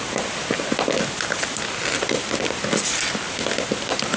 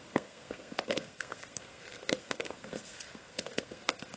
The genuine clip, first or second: first